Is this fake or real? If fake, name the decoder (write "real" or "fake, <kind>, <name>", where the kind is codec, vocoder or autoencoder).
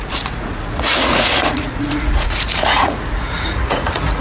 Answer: fake, vocoder, Vocos